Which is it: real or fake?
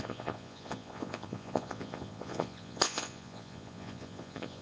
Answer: fake